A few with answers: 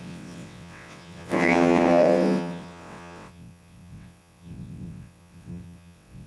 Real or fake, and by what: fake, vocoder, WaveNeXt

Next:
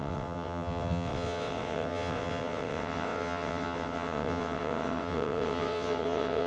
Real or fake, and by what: fake, vocoder, WaveNeXt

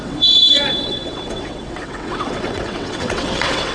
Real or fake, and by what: fake, vocoder, WaveNeXt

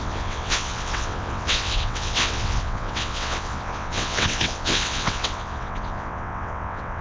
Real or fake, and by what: fake, vocoder, WaveNeXt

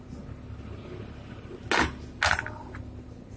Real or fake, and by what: real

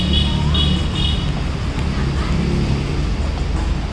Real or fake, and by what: real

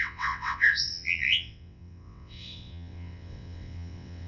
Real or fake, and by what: fake, vocoder, WaveNeXt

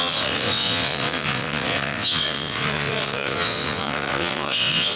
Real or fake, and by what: fake, vocoder, WaveNeXt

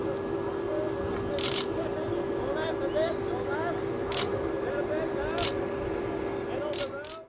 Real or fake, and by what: real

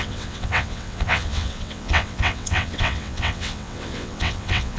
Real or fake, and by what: fake, vocoder, WaveNeXt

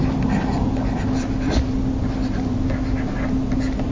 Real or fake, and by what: real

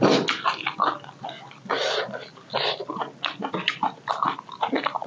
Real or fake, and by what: real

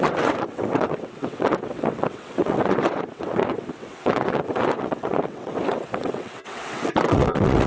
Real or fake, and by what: fake, vocoder, WaveNeXt